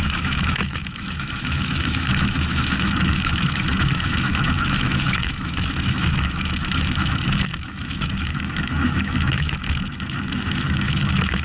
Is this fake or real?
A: fake